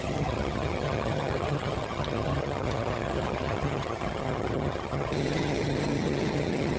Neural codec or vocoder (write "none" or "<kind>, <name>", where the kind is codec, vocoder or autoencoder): vocoder, HiFi-GAN